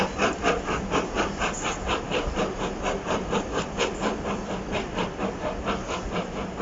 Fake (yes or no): no